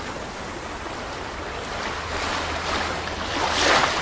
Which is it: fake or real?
real